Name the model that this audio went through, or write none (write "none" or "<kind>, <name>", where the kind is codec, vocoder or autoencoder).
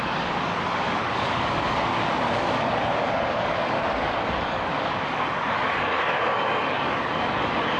codec, DAC